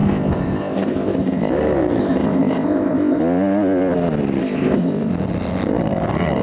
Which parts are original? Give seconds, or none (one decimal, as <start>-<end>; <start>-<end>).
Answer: 1.5-2.0; 3.2-4.4; 5.1-6.4

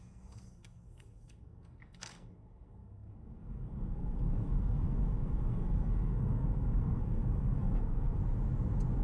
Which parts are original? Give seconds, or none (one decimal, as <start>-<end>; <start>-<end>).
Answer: 8.2-9.0

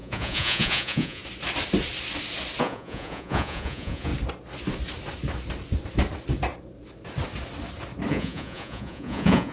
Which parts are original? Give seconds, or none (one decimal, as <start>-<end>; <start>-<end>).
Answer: 1.2-2.6; 4.1-8.1

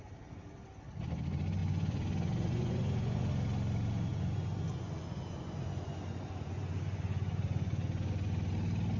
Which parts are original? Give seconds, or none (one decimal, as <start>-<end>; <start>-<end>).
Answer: 0.0-1.6; 3.3-4.1; 8.5-9.0